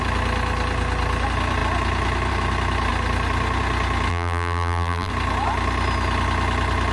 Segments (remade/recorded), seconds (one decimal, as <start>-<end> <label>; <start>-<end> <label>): 0.0-4.1 recorded; 4.1-5.1 remade; 5.1-6.9 recorded